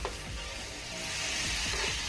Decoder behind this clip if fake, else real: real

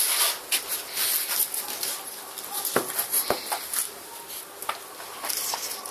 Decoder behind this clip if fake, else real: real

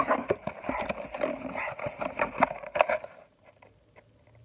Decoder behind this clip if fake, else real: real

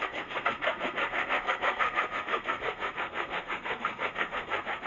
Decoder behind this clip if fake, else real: fake, codec, SNAC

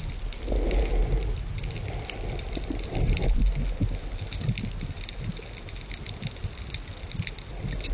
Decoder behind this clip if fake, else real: real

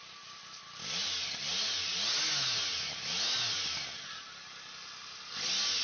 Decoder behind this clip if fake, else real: real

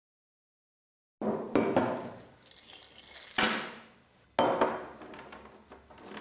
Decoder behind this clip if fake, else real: real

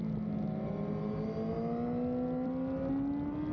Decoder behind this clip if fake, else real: real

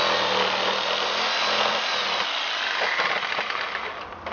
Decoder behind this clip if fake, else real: real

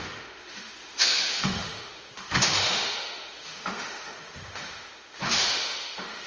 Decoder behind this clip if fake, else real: fake, autoencoder, DAC-VAE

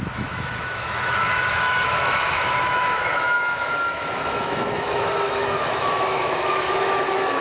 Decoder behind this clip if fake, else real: fake, autoencoder, DAC-VAE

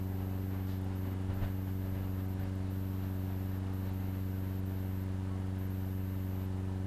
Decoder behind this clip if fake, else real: real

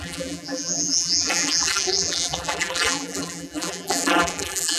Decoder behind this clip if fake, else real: fake, vocoder, BigVGAN v2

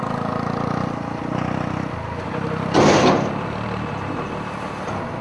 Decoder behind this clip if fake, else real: real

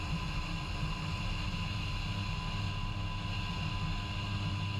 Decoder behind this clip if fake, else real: real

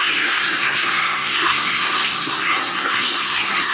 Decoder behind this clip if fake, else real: fake, codec, SNAC